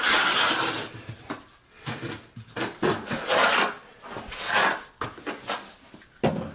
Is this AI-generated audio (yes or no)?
no